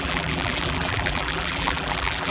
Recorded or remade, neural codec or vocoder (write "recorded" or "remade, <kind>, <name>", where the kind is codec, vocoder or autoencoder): remade, vocoder, BigVGAN v2